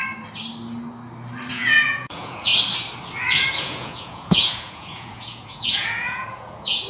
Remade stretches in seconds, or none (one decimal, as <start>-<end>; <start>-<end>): 1.5-2.5; 3.5-6.9